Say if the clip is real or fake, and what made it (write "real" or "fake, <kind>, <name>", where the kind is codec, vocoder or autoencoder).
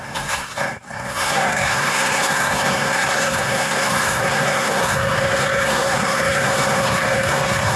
fake, codec, SNAC